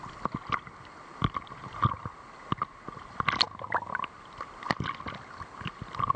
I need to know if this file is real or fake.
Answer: real